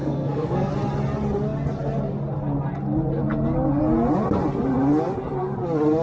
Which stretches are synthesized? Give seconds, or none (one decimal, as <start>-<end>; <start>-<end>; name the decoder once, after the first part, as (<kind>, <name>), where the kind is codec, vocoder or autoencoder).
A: 0.0-0.7 (codec, SNAC)